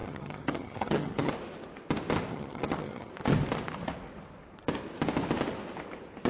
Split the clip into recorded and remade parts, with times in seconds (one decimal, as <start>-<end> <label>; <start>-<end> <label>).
0.0-1.3 remade; 1.3-2.3 recorded; 2.3-3.1 remade; 3.1-6.3 recorded